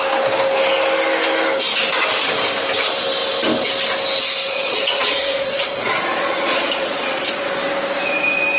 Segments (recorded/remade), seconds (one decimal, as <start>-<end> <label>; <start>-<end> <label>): 0.0-4.4 recorded; 4.4-7.5 remade; 7.5-8.6 recorded